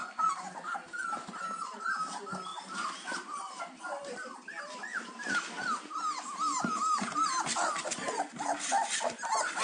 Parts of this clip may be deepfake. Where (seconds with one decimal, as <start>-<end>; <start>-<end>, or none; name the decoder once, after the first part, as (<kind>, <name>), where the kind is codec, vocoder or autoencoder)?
2.5-3.6 (vocoder, BigVGAN v2)